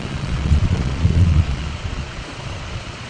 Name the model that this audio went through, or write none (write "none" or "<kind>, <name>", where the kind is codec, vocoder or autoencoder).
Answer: vocoder, Vocos